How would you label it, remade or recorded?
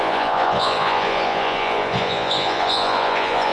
remade